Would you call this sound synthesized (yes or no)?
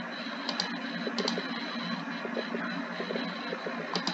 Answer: no